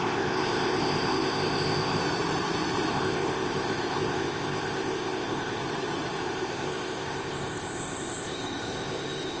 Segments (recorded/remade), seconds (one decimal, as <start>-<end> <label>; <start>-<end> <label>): 0.0-2.0 remade; 2.0-2.9 recorded; 2.9-5.6 remade; 5.6-6.2 recorded; 6.2-9.4 remade